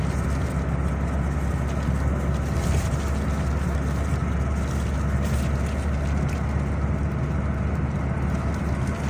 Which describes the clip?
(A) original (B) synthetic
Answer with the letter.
A